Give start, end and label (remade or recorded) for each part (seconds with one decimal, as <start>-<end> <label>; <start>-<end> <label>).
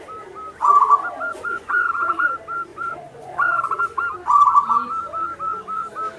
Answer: 0.0-1.3 recorded; 1.3-2.3 remade; 2.3-2.7 recorded; 2.7-3.8 remade; 3.8-6.2 recorded